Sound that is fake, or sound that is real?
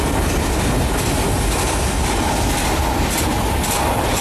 real